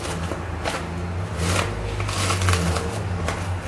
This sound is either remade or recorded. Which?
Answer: recorded